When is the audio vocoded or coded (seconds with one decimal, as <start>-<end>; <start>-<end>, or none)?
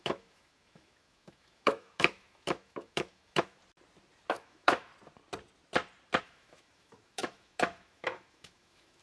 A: 0.0-3.6; 4.3-4.9; 6.2-9.0